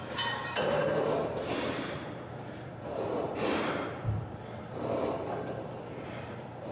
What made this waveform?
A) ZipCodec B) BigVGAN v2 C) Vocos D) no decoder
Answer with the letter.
B